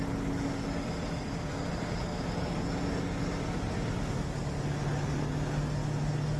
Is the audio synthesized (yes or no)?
no